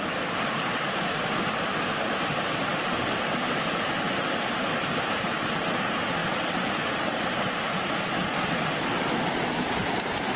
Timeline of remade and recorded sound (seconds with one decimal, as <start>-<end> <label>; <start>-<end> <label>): 0.0-8.2 remade; 8.2-9.3 recorded; 9.3-10.4 remade